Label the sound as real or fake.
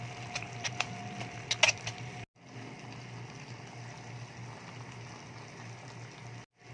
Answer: real